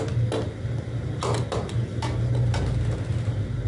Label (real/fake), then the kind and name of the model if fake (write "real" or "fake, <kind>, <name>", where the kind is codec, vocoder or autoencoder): real